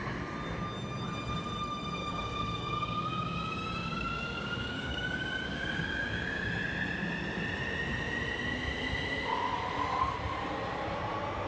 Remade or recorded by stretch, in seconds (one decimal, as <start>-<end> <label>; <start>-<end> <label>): 0.0-2.0 recorded; 2.0-6.5 remade; 6.5-11.5 recorded